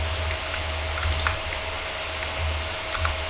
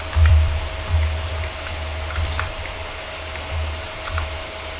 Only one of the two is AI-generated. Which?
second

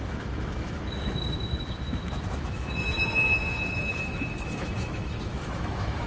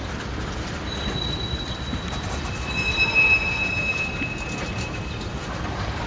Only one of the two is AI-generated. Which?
first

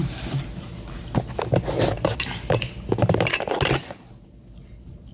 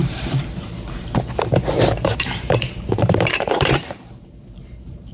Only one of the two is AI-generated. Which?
second